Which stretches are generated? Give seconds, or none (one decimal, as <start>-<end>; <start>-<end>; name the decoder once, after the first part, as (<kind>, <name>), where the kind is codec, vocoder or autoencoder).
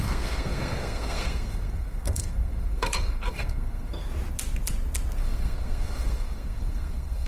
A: 0.0-4.0 (codec, SNAC); 5.2-7.3